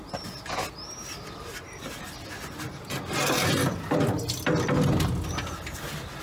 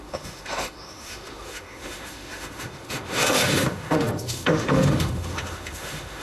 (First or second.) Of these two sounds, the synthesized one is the second